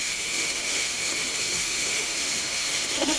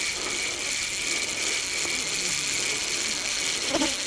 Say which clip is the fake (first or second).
first